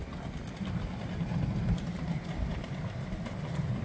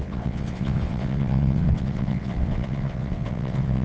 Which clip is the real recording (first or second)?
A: first